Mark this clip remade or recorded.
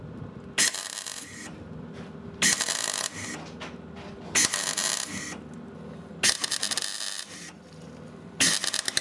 recorded